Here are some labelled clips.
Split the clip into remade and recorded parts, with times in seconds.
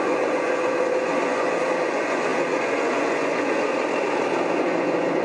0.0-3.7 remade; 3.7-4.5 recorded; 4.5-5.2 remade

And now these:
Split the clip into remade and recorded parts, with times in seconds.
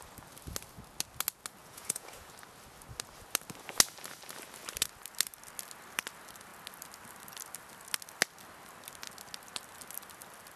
0.0-1.6 recorded; 1.6-2.3 remade; 2.3-10.6 recorded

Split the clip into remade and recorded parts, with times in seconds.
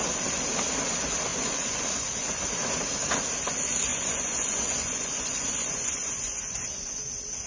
0.0-1.3 recorded; 1.3-2.4 remade; 2.4-3.9 recorded; 3.9-7.0 remade; 7.0-7.5 recorded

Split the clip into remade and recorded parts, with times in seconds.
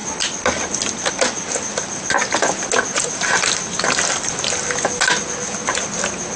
0.0-6.4 recorded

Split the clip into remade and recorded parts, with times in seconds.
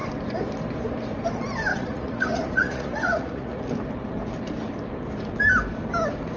0.0-1.7 recorded; 1.7-3.6 remade; 3.6-6.4 recorded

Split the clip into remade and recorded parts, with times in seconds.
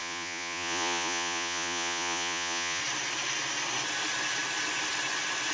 0.0-2.8 remade; 2.8-5.5 recorded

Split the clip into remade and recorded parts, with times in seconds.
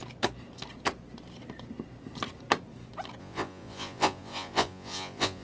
0.0-3.2 recorded; 3.2-5.4 remade